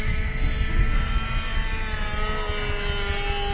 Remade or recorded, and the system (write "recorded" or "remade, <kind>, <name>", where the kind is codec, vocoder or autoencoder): recorded